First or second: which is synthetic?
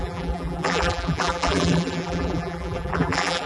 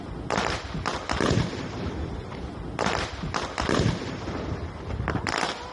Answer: first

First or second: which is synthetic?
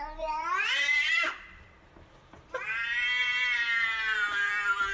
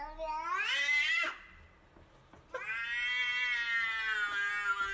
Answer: first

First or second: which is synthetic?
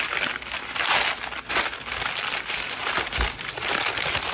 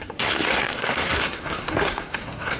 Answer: second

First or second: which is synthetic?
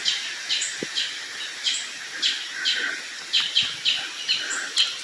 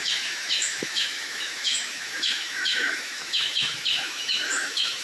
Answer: second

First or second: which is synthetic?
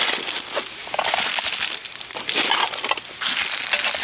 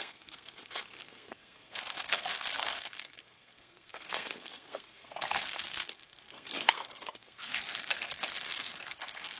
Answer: second